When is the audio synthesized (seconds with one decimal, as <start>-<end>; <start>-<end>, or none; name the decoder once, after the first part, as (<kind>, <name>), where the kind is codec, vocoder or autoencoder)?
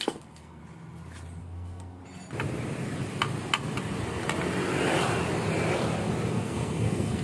0.0-0.6 (codec, SNAC); 1.4-2.0; 6.3-7.2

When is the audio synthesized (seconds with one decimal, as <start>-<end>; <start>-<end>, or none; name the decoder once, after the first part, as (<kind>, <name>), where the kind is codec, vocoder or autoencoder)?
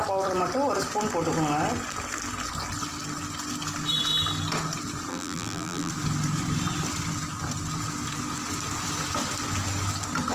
5.1-5.9 (vocoder, BigVGAN v2)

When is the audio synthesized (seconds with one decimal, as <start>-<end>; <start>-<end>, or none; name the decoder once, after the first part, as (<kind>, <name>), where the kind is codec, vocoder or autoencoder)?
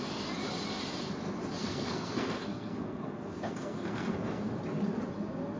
1.6-4.5 (codec, SNAC)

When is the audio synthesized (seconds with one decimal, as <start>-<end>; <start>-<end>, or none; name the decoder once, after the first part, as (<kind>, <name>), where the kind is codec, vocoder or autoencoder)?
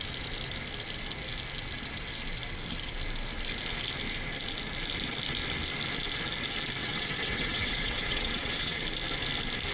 6.8-8.8 (vocoder, WaveNeXt)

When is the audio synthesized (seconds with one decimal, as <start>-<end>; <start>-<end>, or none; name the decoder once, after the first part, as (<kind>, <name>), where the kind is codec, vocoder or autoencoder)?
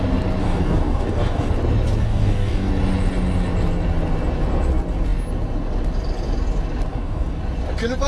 0.4-1.5 (codec, DAC); 2.0-2.7; 6.9-7.4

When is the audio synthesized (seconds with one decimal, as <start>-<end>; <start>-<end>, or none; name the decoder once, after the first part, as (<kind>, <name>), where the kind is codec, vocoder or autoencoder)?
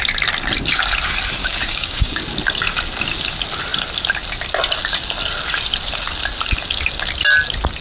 1.4-2.2 (codec, DAC)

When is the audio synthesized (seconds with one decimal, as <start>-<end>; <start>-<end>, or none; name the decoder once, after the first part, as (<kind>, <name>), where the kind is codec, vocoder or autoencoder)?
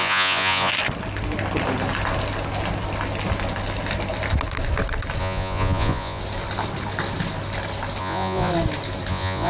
0.0-0.7 (vocoder, Vocos); 5.2-6.2; 8.0-8.5; 9.1-9.5